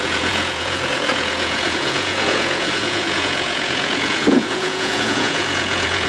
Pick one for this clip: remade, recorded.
remade